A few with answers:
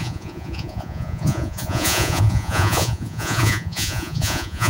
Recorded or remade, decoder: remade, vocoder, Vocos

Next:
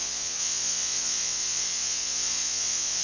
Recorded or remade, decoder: remade, vocoder, Vocos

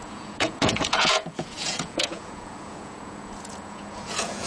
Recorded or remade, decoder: remade, vocoder, Vocos